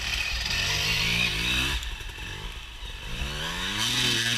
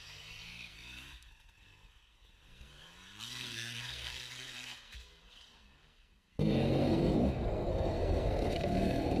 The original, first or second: first